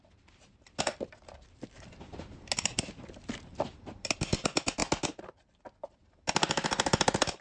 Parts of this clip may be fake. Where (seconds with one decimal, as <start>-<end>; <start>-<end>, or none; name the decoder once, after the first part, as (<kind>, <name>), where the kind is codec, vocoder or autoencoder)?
none